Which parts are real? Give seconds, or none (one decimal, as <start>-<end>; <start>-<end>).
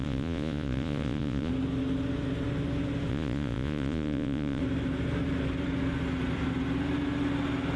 1.5-3.1; 4.6-7.8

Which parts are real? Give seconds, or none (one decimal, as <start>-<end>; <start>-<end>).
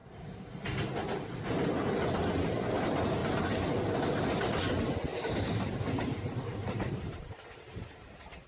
0.6-5.1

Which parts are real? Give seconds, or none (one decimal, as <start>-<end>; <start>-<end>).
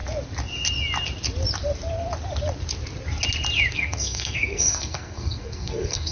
0.0-3.7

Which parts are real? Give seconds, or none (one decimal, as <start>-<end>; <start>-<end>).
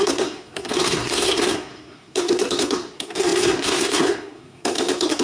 none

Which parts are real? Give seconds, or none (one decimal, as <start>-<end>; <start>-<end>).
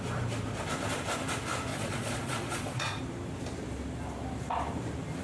0.0-1.7; 3.0-5.2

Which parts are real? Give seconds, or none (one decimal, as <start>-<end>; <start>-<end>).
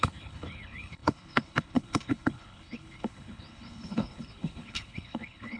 none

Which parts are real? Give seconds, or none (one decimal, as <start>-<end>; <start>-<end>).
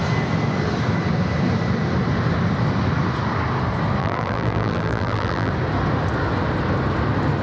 0.0-4.0; 5.5-7.4